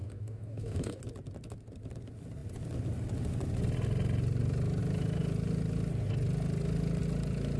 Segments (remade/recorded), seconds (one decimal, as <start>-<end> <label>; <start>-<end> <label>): 0.0-1.0 remade; 1.0-7.6 recorded